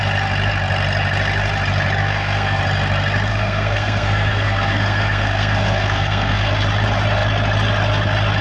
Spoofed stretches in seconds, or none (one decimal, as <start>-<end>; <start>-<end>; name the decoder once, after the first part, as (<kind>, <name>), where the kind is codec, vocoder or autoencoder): 2.0-2.6 (codec, SNAC); 3.3-6.5

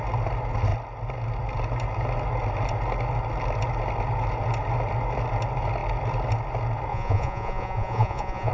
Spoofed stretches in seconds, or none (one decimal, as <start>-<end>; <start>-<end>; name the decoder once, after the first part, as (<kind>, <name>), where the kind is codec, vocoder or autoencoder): 6.9-8.5 (vocoder, Vocos)

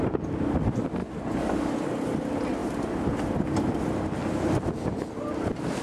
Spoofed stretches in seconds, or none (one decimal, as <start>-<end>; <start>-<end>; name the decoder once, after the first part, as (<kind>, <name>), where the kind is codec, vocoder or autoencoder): 1.0-1.7 (codec, DAC)

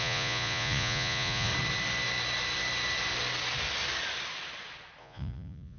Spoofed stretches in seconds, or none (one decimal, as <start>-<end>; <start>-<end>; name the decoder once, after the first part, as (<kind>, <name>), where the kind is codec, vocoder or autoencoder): 0.0-1.5 (vocoder, Vocos); 5.0-5.8

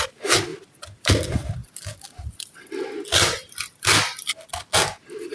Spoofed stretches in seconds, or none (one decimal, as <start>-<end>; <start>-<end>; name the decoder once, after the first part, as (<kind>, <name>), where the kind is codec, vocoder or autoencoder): none

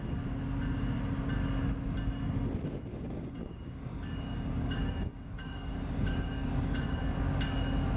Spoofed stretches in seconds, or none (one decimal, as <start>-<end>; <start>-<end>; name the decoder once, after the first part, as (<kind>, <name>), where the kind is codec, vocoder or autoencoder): 2.9-7.0 (codec, DAC)

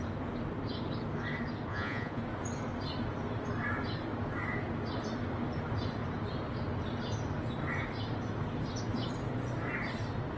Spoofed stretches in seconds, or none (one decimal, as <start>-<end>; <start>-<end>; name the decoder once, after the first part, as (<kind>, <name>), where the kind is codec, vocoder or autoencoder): 1.7-2.2 (vocoder, Vocos)